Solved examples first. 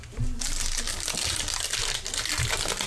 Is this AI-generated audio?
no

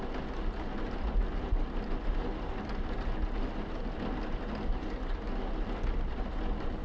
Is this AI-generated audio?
no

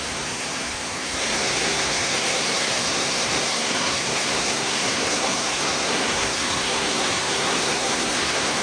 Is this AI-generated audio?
yes